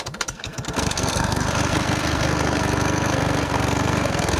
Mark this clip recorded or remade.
remade